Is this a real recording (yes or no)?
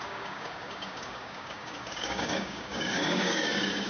no